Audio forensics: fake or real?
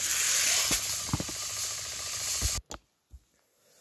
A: real